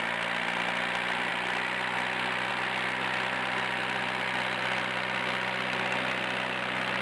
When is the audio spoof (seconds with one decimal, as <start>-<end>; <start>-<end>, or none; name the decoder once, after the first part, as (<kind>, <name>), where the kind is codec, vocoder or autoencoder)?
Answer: none